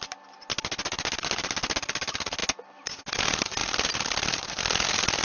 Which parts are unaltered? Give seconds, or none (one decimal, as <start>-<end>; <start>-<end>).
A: 0.0-5.2